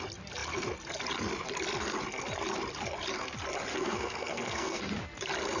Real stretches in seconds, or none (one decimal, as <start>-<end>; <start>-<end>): 0.0-3.7; 4.8-5.6